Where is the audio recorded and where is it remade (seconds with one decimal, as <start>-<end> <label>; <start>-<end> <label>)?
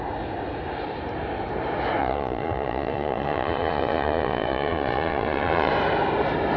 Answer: 0.0-2.0 recorded; 2.0-5.7 remade; 5.7-6.6 recorded